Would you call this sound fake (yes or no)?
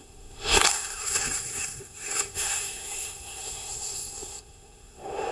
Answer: yes